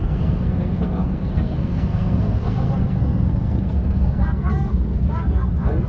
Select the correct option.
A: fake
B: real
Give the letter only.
A